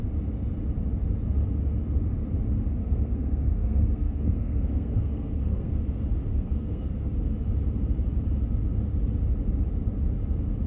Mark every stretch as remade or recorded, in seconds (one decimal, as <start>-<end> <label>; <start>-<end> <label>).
0.0-2.8 recorded; 2.8-5.7 remade; 5.7-6.3 recorded; 6.3-7.1 remade; 7.1-10.7 recorded